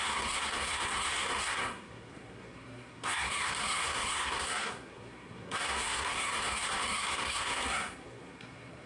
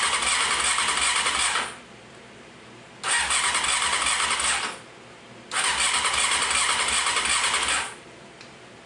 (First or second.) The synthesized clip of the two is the first